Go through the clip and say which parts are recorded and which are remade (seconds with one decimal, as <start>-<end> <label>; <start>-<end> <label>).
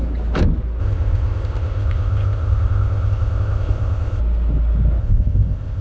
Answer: 0.0-0.8 recorded; 0.8-4.2 remade; 4.2-5.0 recorded; 5.0-5.8 remade